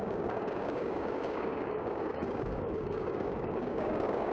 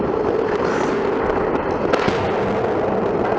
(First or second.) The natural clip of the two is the second